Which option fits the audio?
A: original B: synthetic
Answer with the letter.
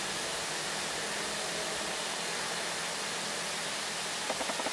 A